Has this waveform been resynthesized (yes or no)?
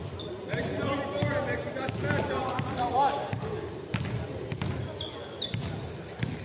no